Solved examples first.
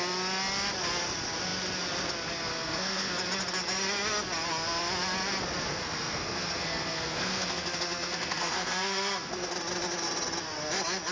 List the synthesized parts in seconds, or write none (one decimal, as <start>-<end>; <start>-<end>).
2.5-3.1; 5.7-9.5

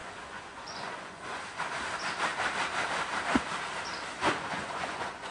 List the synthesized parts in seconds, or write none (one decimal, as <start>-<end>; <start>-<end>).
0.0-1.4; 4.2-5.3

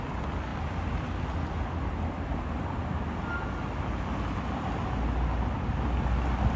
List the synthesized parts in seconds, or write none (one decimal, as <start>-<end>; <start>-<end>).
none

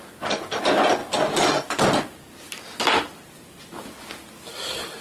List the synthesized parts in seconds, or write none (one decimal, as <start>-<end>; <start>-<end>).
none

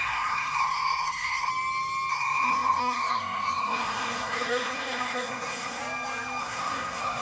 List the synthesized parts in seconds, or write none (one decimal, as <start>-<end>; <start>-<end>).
0.0-1.5; 2.1-5.8; 6.4-7.2